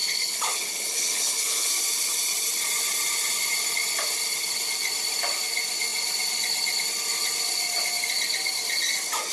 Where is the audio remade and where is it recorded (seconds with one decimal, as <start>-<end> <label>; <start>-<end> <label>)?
0.0-1.7 remade; 1.7-9.3 recorded